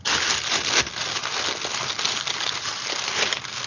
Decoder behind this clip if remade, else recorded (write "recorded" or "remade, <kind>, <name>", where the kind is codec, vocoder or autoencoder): recorded